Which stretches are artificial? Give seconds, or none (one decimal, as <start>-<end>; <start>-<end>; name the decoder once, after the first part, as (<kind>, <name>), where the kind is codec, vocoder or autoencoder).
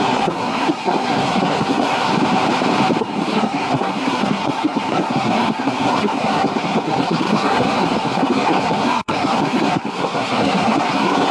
0.0-2.1 (codec, SNAC); 3.0-11.3